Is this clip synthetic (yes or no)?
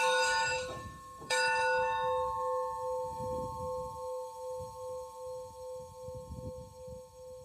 yes